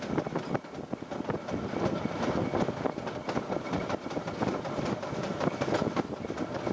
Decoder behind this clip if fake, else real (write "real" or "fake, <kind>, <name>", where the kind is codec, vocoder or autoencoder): real